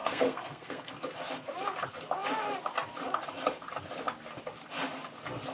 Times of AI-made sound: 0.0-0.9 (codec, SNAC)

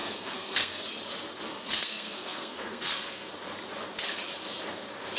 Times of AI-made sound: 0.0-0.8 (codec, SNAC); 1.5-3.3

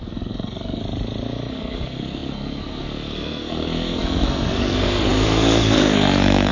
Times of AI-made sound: 0.0-0.8 (codec, SNAC); 1.5-6.5